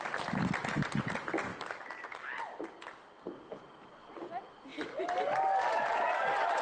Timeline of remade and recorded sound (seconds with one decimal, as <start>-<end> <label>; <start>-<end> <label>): 0.0-4.7 recorded; 4.7-5.9 remade; 5.9-6.6 recorded

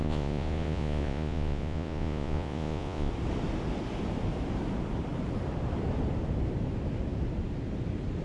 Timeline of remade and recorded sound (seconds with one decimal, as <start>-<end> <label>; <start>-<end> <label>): 0.0-3.1 remade; 3.1-8.2 recorded

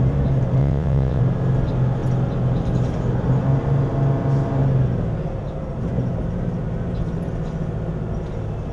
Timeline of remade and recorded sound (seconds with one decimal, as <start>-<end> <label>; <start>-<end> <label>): 0.0-0.6 recorded; 0.6-1.2 remade; 1.2-8.7 recorded

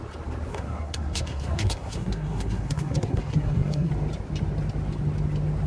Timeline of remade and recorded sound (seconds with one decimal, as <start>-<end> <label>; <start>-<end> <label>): 0.0-0.5 recorded; 0.5-3.9 remade; 3.9-5.7 recorded